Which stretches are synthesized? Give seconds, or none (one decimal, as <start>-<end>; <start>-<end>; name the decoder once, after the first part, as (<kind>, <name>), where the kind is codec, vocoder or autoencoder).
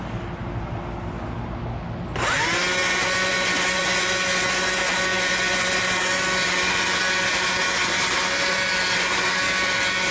none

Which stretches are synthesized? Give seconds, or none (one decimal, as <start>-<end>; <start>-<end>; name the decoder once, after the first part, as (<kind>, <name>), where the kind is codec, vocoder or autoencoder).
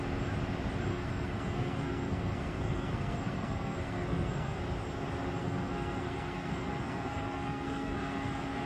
0.9-4.6 (codec, SNAC); 5.4-8.7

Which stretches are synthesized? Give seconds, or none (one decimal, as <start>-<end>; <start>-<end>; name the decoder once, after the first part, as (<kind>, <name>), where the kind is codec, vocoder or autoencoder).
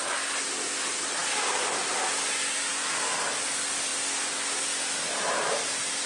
none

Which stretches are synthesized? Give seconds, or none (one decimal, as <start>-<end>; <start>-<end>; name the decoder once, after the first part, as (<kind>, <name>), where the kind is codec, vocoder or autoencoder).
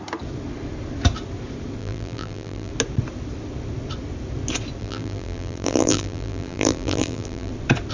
1.8-2.7 (vocoder, BigVGAN v2); 4.8-7.5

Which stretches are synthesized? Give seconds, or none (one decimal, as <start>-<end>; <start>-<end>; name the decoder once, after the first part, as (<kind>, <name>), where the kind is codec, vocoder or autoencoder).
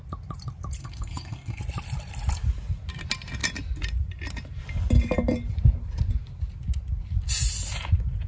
0.8-1.6 (codec, SNAC)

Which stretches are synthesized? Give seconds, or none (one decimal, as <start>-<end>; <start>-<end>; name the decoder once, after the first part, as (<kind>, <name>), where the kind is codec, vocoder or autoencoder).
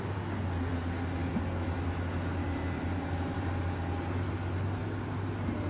2.6-3.7 (vocoder, BigVGAN v2); 4.8-5.7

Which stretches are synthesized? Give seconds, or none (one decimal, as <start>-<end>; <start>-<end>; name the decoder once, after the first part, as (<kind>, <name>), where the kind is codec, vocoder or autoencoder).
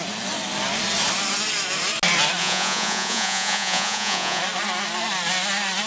2.4-4.4 (vocoder, Vocos)